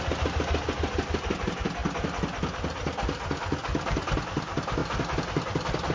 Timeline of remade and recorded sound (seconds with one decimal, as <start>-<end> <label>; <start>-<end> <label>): 0.0-5.9 recorded